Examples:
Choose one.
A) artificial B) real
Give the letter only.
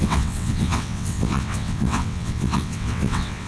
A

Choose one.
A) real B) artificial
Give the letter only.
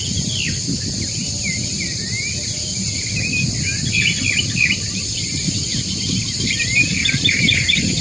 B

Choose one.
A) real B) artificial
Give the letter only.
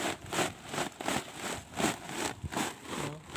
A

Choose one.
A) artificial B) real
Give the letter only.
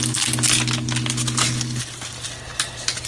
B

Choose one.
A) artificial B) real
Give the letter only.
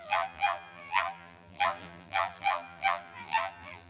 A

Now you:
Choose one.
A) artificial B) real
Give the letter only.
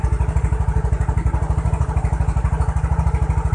B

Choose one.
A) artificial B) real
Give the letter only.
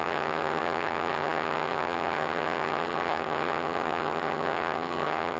A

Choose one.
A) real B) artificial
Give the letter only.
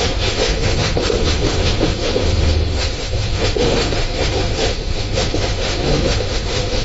B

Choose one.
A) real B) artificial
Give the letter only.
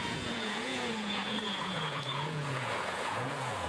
B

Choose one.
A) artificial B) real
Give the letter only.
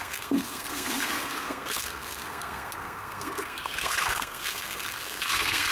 A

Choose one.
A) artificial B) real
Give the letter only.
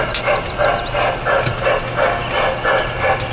B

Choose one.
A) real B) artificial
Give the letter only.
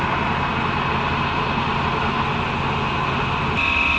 A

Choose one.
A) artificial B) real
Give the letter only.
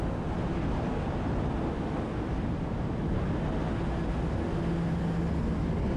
B